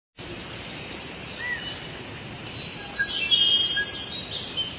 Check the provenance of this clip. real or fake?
real